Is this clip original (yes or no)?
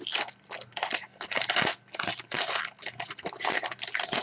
yes